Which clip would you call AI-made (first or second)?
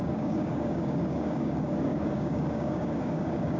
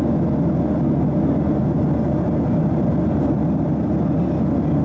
first